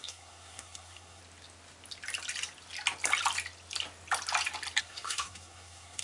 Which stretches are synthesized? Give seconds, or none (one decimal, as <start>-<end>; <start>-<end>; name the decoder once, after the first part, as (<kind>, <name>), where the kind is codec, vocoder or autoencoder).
0.0-1.2 (codec, SNAC); 4.8-6.0